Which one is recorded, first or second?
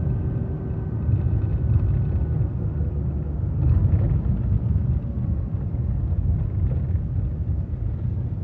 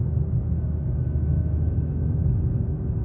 first